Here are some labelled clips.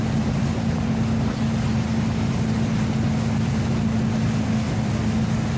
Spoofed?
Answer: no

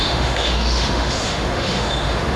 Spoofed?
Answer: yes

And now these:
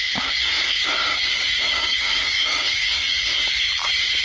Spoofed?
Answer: yes